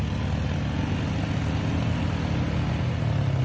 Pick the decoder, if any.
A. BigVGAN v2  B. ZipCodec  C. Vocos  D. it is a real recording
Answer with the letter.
D